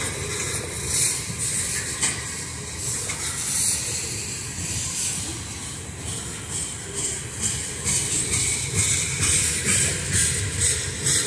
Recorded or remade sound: recorded